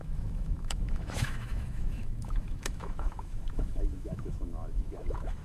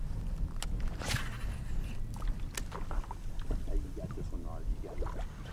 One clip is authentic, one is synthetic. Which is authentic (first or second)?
second